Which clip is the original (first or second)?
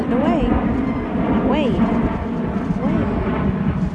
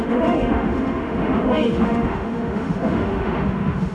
first